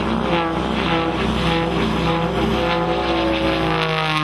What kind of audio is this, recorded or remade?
recorded